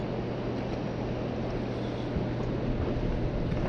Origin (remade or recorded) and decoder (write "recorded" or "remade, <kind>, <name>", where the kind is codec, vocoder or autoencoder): recorded